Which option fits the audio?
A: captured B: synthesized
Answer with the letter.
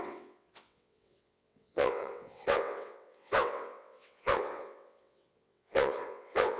B